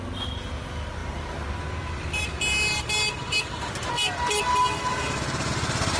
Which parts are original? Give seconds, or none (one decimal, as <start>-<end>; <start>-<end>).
0.0-1.0; 1.6-3.2; 3.8-4.9; 5.5-6.0